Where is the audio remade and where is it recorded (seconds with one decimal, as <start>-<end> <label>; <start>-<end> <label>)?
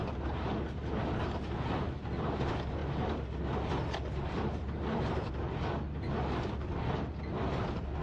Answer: 0.0-8.0 recorded